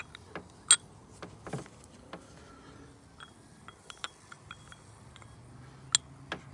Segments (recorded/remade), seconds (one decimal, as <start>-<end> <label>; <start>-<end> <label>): 0.0-6.5 recorded